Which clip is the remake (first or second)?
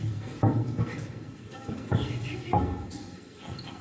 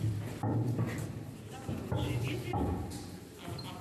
first